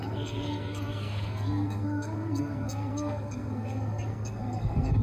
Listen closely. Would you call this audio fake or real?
fake